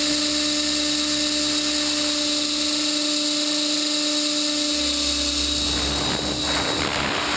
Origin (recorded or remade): recorded